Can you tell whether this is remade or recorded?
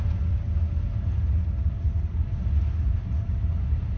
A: recorded